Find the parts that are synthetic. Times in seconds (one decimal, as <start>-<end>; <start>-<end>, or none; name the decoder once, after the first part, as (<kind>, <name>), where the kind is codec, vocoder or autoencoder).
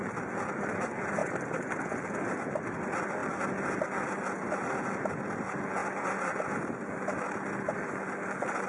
none